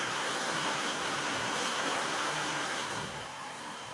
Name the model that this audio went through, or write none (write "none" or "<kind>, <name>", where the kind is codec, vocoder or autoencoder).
codec, SNAC